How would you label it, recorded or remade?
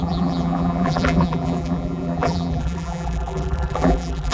remade